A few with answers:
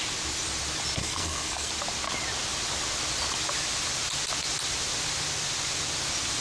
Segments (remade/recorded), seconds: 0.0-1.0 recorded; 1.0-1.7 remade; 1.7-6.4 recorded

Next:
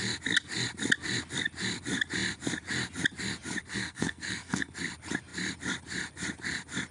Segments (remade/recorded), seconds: 0.0-3.7 recorded; 3.7-4.7 remade; 4.7-6.9 recorded

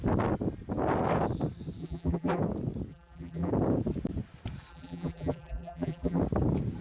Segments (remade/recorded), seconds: 0.0-1.8 recorded; 1.8-2.4 remade; 2.4-2.9 recorded; 2.9-3.5 remade; 3.5-4.7 recorded; 4.7-6.2 remade; 6.2-6.8 recorded